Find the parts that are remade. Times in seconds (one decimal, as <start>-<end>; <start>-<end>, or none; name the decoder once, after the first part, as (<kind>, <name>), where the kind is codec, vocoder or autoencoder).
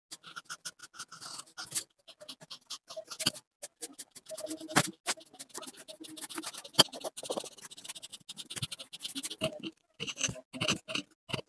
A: none